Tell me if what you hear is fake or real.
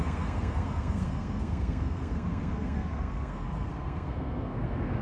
fake